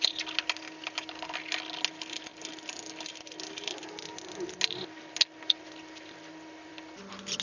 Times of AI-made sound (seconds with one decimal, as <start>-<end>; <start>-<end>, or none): none